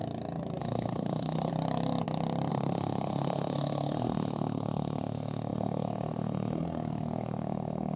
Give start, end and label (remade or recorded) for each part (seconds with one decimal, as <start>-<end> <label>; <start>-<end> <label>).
0.0-0.6 recorded; 0.6-1.5 remade; 1.5-2.5 recorded; 2.5-8.0 remade